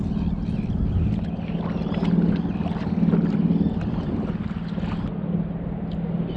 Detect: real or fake real